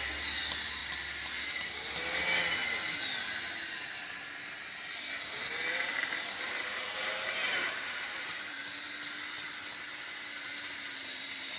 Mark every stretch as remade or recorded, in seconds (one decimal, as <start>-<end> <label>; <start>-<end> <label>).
0.0-0.8 remade; 0.8-5.7 recorded; 5.7-8.6 remade; 8.6-10.5 recorded; 10.5-11.6 remade